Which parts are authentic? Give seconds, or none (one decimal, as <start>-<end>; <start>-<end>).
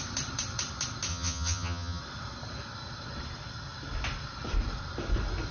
0.0-1.1; 2.0-5.5